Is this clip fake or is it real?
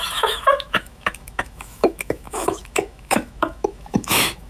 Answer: fake